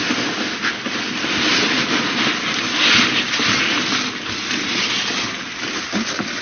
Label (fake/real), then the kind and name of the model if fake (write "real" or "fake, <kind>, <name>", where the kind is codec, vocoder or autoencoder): real